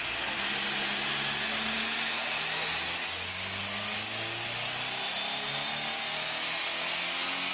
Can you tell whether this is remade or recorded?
recorded